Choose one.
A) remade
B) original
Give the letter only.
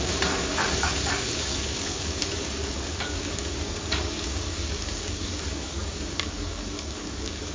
A